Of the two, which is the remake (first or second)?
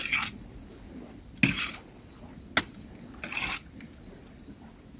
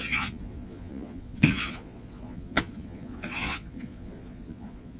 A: second